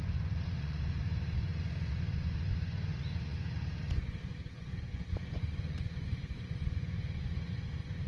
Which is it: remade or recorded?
remade